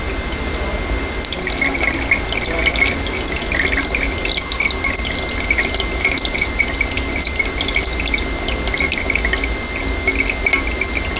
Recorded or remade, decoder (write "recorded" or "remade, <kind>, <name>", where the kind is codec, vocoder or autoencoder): recorded